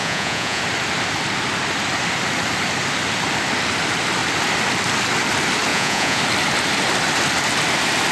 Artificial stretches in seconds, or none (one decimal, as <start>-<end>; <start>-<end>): 0.0-0.6; 5.7-6.2